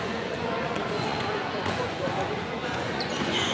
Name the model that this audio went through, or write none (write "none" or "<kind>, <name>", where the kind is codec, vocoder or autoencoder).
vocoder, Vocos